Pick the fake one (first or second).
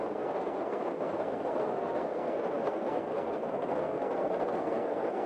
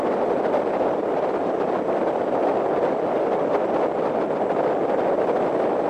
first